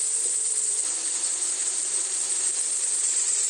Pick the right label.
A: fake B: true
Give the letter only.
B